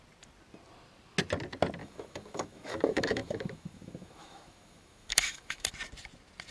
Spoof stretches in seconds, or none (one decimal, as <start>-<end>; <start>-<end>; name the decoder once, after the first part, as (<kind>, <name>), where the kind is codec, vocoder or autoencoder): 1.8-5.7 (autoencoder, DAC-VAE)